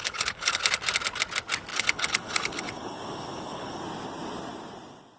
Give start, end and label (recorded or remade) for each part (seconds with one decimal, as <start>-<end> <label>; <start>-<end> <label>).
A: 0.0-0.6 remade; 0.6-1.7 recorded; 1.7-3.8 remade; 3.8-5.2 recorded